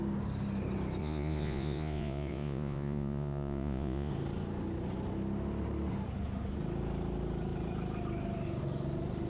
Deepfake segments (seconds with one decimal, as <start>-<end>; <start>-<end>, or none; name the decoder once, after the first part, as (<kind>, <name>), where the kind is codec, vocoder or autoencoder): 1.0-4.1 (vocoder, Vocos)